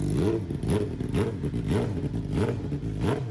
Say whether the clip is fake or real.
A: real